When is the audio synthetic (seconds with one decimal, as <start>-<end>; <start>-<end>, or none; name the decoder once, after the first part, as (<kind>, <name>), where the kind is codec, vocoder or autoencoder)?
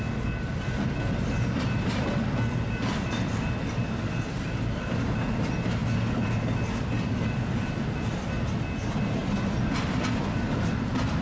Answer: none